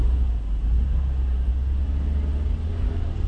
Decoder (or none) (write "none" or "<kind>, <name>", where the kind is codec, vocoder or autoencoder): none